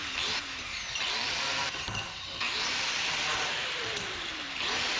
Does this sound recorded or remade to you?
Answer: remade